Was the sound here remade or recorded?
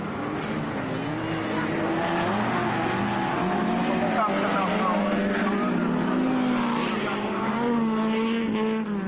recorded